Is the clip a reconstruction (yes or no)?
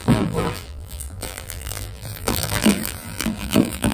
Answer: yes